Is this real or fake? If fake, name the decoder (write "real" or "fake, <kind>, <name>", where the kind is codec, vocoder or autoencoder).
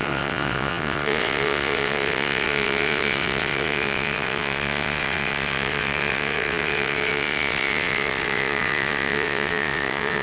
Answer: fake, vocoder, WaveNeXt